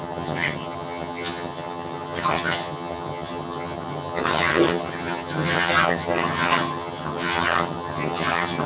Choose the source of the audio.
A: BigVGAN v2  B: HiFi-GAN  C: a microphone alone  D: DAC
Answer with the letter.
B